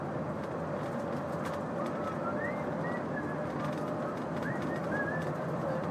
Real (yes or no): yes